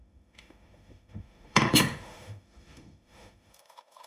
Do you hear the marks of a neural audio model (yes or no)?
yes